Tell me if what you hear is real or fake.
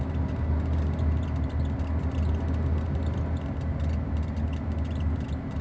real